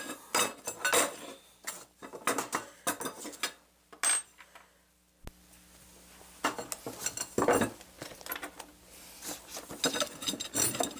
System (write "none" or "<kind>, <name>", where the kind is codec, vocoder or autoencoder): none